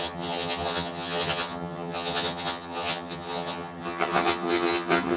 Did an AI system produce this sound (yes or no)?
yes